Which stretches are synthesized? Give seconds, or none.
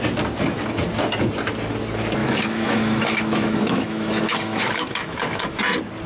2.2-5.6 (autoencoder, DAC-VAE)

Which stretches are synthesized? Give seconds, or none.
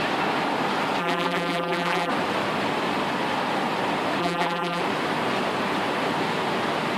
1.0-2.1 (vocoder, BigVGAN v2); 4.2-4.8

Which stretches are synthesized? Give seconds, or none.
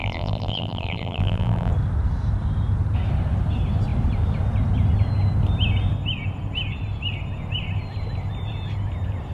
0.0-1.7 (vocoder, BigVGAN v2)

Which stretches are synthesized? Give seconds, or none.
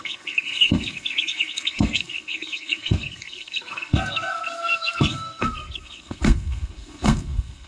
0.0-7.7 (codec, SNAC)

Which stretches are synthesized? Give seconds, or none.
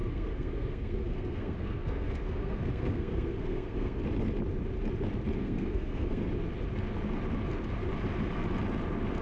0.0-4.0 (codec, SNAC); 5.4-6.3